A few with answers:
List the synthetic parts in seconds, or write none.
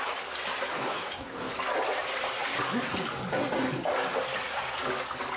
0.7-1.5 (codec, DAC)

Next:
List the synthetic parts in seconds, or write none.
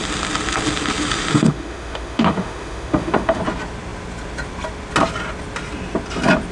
1.3-3.4 (autoencoder, DAC-VAE)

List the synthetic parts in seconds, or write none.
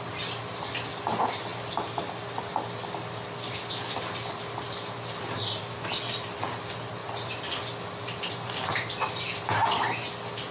none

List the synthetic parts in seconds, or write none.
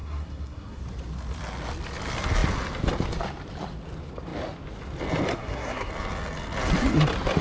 0.0-0.8 (codec, SNAC); 5.3-5.9